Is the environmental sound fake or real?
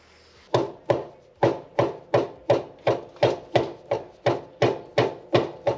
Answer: real